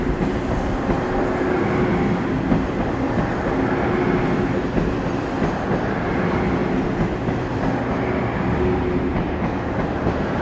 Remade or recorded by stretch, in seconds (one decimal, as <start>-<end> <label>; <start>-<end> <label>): 0.0-9.1 recorded; 9.1-10.4 remade